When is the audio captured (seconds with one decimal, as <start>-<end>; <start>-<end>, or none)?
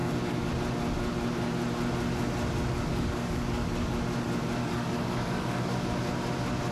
0.5-2.9; 3.9-4.6; 6.0-6.7